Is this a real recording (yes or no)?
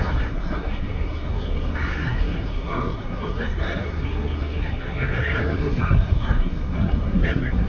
no